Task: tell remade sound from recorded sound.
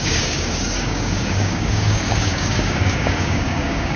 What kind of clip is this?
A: remade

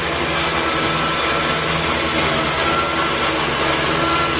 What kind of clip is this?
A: recorded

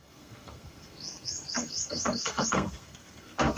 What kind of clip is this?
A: remade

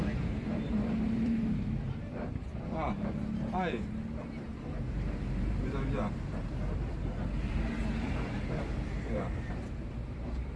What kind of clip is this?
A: remade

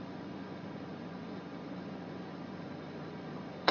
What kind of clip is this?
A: remade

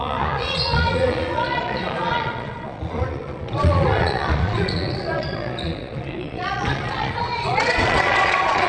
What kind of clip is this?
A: remade